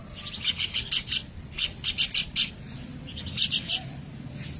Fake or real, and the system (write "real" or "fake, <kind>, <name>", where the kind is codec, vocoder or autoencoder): real